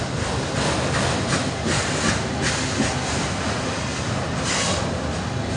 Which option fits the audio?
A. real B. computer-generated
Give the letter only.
A